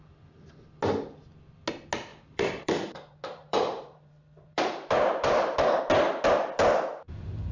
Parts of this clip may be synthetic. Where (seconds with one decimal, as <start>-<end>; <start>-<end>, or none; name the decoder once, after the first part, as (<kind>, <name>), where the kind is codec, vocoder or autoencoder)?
2.1-5.8 (vocoder, BigVGAN v2)